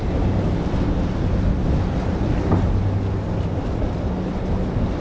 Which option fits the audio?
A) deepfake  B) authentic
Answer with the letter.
B